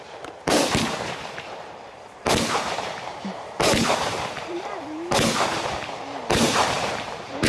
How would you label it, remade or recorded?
remade